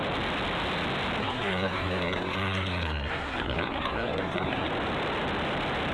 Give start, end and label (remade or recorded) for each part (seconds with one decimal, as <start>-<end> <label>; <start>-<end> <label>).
0.0-1.2 recorded; 1.2-4.7 remade; 4.7-5.9 recorded